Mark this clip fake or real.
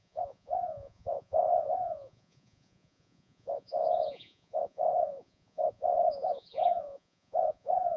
fake